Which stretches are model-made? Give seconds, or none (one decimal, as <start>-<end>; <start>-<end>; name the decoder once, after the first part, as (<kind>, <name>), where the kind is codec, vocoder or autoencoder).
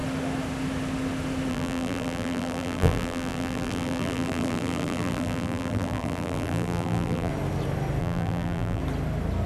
1.5-7.3 (vocoder, BigVGAN v2); 8.0-8.8